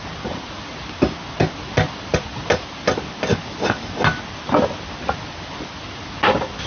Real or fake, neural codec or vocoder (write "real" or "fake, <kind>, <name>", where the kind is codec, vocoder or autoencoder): real